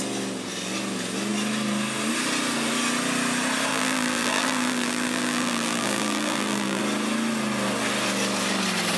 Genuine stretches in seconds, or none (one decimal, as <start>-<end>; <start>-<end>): 0.0-3.7; 6.8-9.0